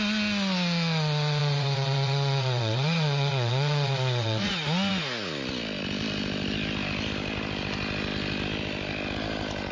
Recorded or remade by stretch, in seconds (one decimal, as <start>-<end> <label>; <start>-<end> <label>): 0.0-1.4 recorded; 1.4-4.5 remade; 4.5-9.7 recorded